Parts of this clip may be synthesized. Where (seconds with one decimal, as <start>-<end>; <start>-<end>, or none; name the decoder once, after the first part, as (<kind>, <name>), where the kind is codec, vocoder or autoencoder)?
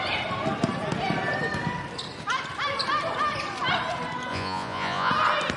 4.3-5.1 (vocoder, Vocos)